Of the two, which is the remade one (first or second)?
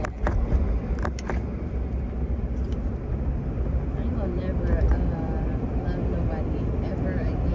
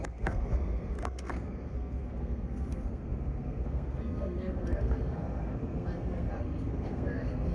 second